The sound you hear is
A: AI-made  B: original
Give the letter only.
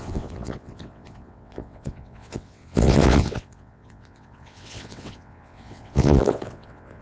A